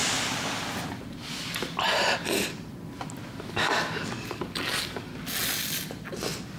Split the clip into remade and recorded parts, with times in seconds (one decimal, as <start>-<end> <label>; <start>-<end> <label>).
0.0-3.5 recorded; 3.5-5.1 remade; 5.1-6.6 recorded